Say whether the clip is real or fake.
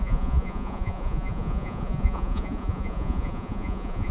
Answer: fake